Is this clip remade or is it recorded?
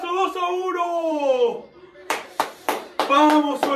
remade